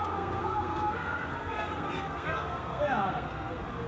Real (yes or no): no